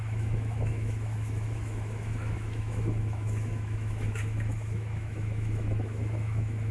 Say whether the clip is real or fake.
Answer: fake